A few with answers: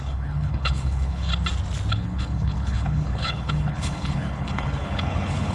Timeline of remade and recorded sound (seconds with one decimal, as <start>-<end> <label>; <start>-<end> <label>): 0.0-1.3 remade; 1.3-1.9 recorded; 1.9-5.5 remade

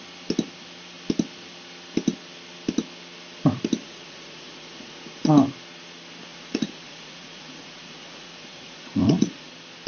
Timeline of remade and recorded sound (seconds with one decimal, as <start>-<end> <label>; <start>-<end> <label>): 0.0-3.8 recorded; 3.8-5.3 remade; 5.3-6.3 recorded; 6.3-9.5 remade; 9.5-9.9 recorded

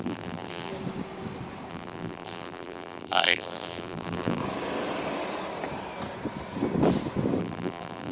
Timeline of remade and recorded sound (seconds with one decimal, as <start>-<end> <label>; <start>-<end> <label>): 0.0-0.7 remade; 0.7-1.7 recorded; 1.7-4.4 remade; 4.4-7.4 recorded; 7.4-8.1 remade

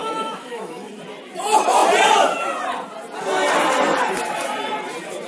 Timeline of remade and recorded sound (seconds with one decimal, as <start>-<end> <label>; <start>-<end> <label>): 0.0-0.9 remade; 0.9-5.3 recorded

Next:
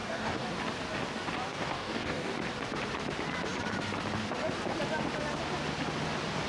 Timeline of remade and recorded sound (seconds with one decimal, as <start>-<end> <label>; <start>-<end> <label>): 0.0-0.5 remade; 0.5-1.5 recorded; 1.5-2.3 remade; 2.3-6.5 recorded

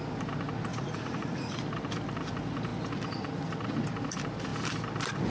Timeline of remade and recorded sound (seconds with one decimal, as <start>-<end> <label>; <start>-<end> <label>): 0.0-0.7 recorded; 0.7-1.6 remade; 1.6-5.3 recorded